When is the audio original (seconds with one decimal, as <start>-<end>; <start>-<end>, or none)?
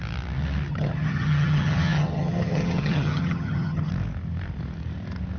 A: 0.0-0.7; 3.9-5.4